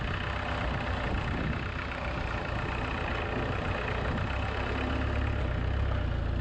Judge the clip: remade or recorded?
recorded